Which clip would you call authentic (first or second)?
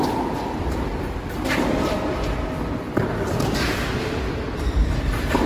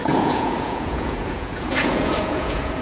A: first